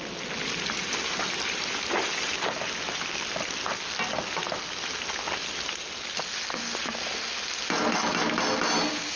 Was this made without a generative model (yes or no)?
yes